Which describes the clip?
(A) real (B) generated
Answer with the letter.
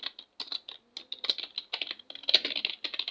A